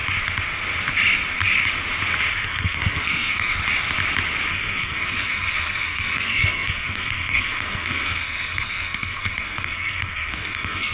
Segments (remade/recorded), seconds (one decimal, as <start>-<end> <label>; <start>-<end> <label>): 0.0-2.4 recorded; 2.4-3.5 remade; 3.5-4.5 recorded; 4.5-10.9 remade